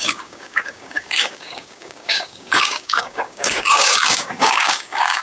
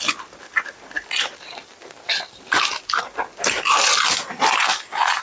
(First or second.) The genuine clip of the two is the second